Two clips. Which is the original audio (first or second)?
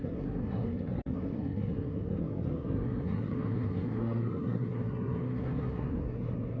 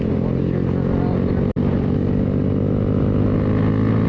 second